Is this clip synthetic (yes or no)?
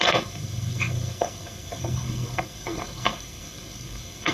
yes